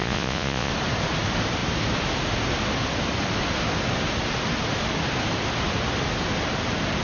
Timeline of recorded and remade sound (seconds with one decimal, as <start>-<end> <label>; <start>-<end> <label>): 0.0-0.7 remade; 0.7-7.0 recorded